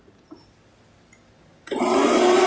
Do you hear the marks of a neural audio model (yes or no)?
no